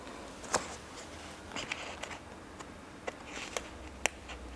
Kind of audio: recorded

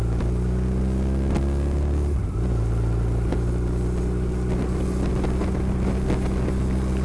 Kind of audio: recorded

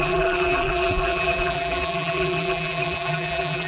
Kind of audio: remade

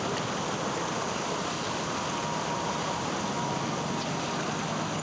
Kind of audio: recorded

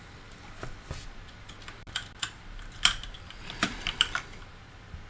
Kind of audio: recorded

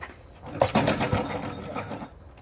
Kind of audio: recorded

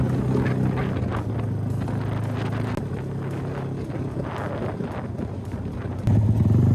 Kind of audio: recorded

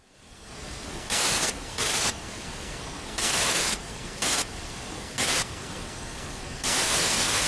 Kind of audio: remade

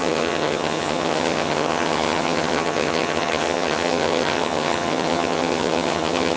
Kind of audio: remade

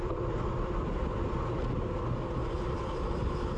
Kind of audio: recorded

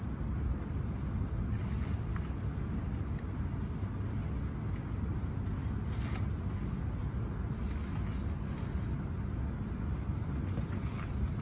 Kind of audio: recorded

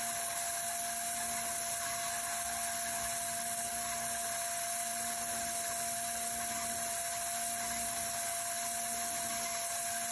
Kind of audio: recorded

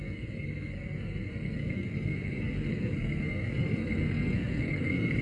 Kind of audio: remade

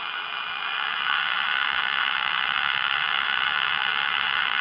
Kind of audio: remade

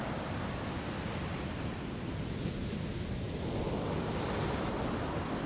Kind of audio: recorded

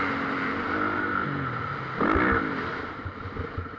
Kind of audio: recorded